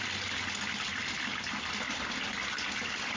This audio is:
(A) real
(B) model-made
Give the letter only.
A